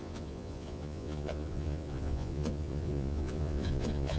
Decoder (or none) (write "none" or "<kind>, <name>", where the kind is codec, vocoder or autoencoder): vocoder, Vocos